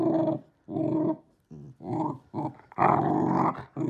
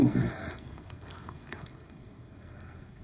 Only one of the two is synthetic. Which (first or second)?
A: second